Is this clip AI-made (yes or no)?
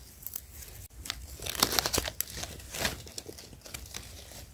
no